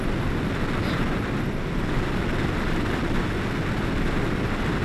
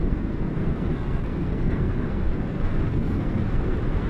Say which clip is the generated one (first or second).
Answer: second